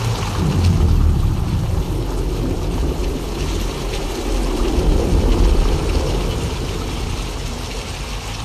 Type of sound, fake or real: real